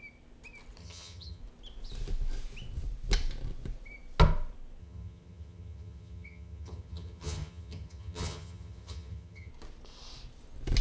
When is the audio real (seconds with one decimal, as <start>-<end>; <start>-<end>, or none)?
0.0-0.8; 1.4-4.8; 9.5-10.8

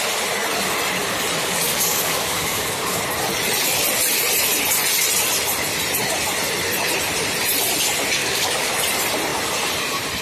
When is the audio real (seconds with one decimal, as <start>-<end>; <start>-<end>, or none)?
0.0-1.4; 3.0-8.2; 8.7-10.2

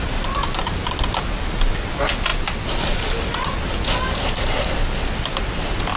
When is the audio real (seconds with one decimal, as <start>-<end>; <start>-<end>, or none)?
0.0-6.0

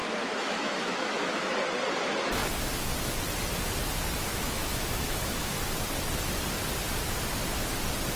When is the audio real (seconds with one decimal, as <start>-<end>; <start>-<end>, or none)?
1.5-4.3; 5.6-8.2

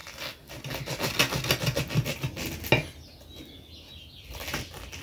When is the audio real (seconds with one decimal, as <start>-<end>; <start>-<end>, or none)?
0.0-5.0

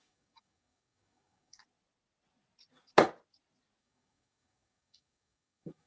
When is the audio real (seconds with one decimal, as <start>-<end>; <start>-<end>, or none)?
1.6-3.8